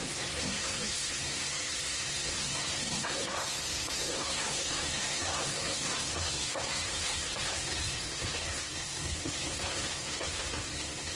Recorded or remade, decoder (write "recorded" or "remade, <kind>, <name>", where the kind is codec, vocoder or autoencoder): remade, codec, SNAC